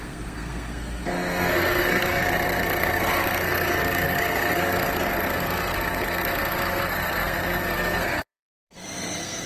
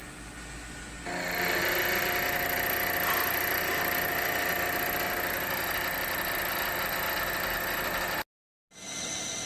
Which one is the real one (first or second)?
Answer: second